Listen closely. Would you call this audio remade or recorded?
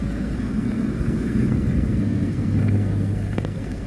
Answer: remade